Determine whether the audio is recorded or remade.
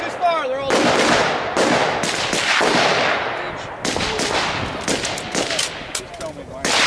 recorded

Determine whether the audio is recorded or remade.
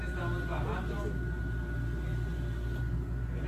recorded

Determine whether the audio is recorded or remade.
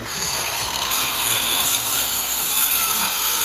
remade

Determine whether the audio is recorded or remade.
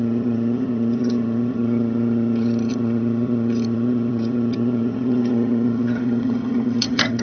remade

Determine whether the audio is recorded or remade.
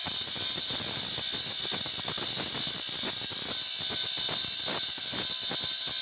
recorded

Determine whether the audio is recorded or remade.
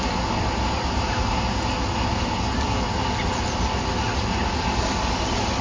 recorded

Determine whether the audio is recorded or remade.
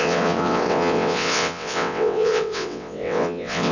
remade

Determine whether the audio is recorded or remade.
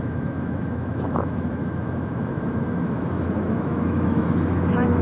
remade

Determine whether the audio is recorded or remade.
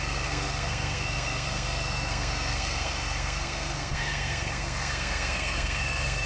remade